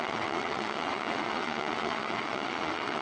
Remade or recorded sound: remade